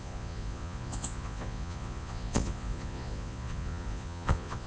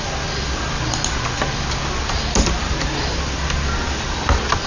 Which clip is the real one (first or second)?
second